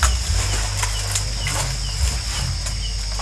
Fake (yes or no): no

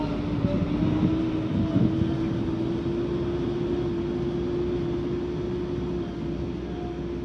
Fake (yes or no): no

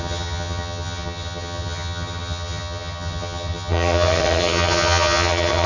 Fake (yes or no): yes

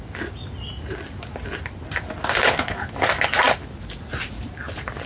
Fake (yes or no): no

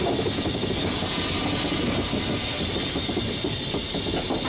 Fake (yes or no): no